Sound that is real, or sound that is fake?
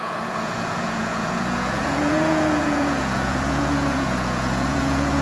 fake